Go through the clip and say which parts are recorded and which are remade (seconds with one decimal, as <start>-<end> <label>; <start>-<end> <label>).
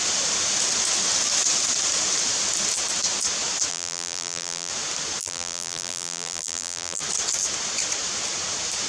0.0-3.7 recorded; 3.7-4.7 remade; 4.7-5.2 recorded; 5.2-7.0 remade; 7.0-8.9 recorded